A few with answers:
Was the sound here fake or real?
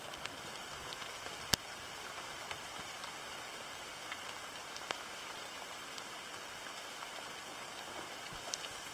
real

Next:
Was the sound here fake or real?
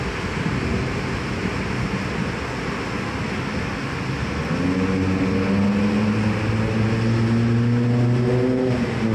real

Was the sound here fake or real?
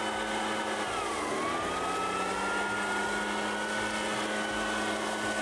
real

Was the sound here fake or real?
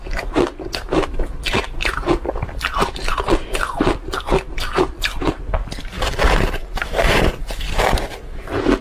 real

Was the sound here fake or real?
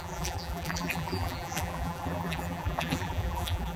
fake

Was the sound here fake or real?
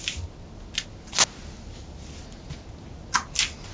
real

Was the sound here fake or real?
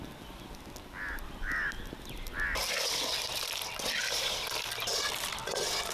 real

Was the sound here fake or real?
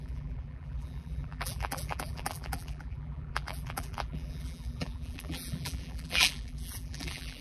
fake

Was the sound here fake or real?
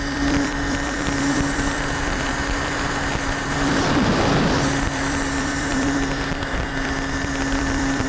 fake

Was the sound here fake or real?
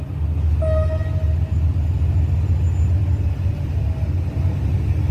real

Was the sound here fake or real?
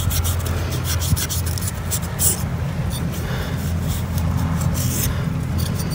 real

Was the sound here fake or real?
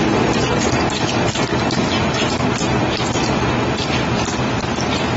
fake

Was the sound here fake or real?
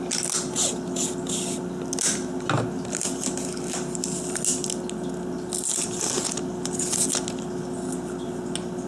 real